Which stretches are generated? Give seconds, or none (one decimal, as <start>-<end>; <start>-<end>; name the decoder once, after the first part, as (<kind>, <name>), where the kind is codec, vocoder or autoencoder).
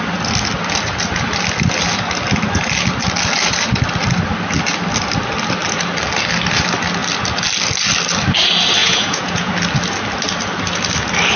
8.8-9.5 (vocoder, Vocos)